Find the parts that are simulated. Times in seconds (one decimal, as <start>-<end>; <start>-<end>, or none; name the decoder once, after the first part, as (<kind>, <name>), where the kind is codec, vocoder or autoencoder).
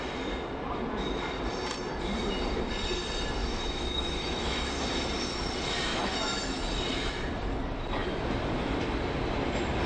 3.4-4.7 (autoencoder, DAC-VAE); 5.9-6.6